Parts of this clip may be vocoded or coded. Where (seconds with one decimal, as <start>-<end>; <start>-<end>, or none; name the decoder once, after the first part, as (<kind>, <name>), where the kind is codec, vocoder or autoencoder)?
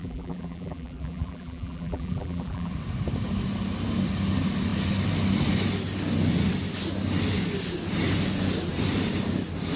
0.0-2.7 (vocoder, BigVGAN v2)